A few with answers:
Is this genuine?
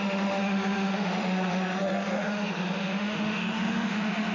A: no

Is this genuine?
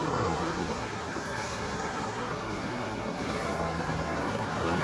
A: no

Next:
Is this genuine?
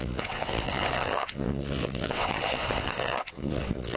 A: no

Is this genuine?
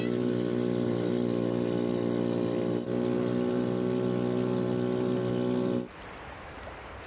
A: yes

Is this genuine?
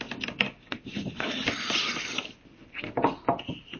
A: yes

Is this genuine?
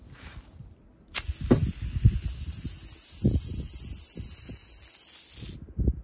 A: yes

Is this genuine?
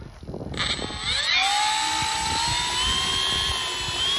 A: yes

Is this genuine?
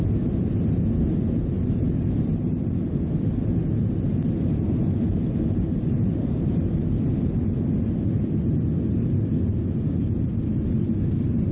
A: no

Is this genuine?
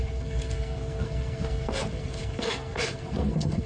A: no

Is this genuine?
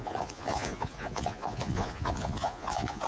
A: no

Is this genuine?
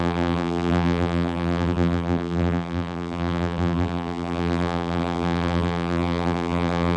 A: no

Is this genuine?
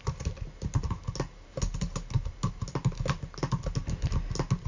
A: yes